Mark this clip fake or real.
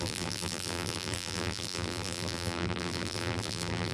fake